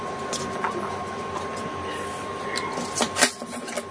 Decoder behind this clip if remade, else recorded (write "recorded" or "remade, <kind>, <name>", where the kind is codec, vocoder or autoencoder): recorded